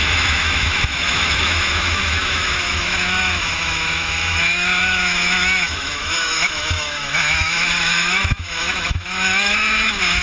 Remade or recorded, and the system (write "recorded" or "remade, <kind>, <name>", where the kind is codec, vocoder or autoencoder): remade, autoencoder, DAC-VAE